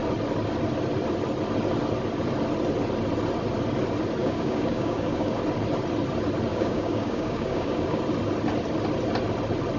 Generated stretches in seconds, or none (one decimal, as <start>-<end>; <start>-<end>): 4.2-5.4; 6.5-8.0